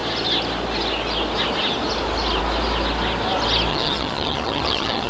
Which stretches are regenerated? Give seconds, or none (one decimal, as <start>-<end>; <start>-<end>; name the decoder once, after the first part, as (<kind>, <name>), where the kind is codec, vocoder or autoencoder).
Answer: 3.7-5.1 (vocoder, HiFi-GAN)